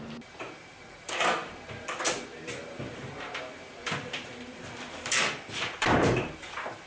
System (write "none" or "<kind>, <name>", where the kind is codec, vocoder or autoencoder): vocoder, BigVGAN v2